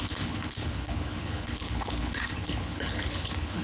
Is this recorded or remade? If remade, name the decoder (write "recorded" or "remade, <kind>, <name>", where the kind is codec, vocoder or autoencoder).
remade, codec, HILCodec